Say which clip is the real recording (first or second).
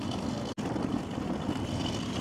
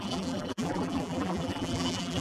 first